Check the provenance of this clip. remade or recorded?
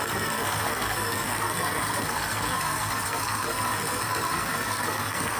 remade